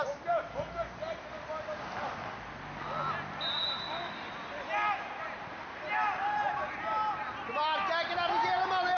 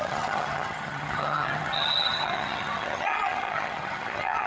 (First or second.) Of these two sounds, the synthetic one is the second